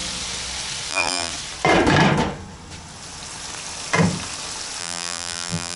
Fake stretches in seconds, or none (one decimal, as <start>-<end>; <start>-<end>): 0.9-1.3; 4.8-5.8